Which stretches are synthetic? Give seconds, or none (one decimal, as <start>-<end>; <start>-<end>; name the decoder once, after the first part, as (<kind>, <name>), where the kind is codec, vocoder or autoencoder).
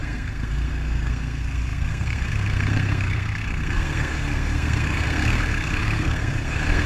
0.0-6.9 (codec, SNAC)